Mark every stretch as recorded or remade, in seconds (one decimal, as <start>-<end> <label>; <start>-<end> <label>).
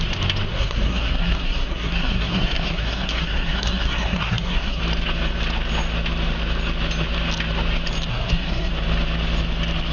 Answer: 0.0-0.5 recorded; 0.5-4.8 remade; 4.8-8.1 recorded; 8.1-8.7 remade; 8.7-9.9 recorded